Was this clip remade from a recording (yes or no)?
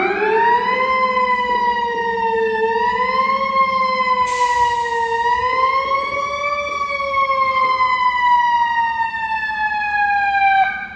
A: no